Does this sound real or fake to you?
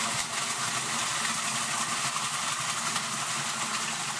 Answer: real